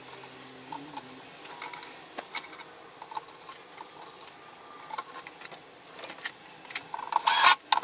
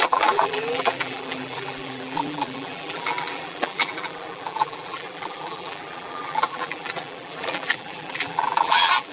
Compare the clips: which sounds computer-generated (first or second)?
second